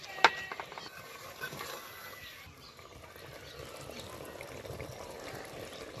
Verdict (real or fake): real